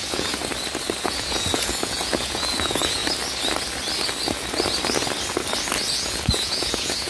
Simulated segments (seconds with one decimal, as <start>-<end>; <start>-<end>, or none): 0.0-0.4; 1.0-3.0; 5.9-7.1